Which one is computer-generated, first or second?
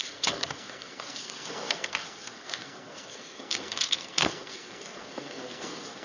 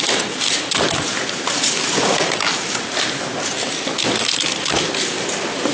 first